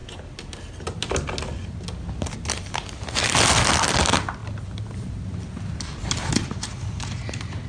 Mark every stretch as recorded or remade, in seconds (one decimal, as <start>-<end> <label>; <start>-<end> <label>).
0.0-7.7 recorded